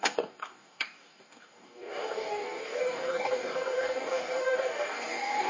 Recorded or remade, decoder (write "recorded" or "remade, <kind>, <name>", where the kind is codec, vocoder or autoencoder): remade, codec, DAC